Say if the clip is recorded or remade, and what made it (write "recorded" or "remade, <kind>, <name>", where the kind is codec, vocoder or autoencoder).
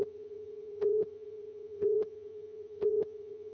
remade, vocoder, HiFi-GAN